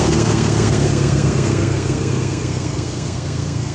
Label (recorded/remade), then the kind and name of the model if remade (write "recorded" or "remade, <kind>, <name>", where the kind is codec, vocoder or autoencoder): remade, codec, SNAC